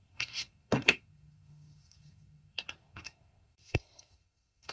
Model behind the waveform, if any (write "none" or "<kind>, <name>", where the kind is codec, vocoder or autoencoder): codec, SNAC